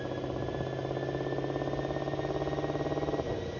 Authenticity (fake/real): real